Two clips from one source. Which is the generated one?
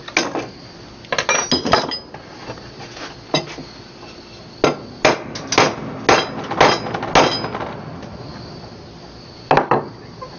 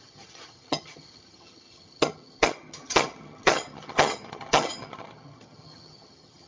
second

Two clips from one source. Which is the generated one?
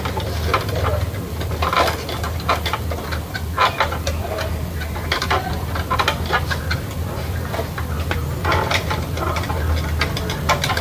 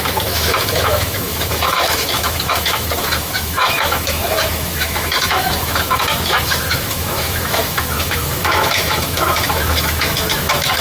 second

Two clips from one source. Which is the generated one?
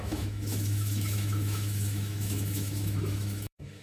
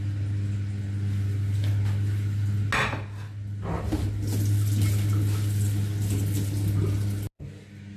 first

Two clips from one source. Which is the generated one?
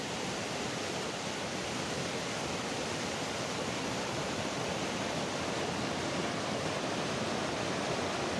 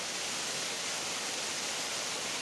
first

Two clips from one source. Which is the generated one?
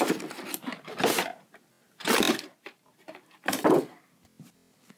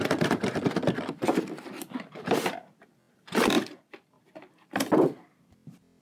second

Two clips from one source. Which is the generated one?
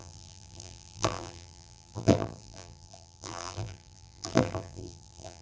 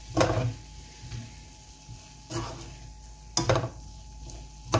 first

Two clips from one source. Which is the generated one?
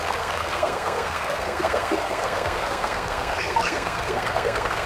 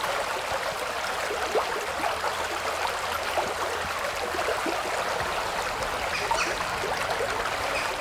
first